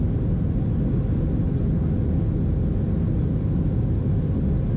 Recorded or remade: recorded